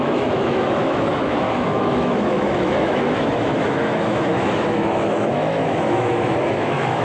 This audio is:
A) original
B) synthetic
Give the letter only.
B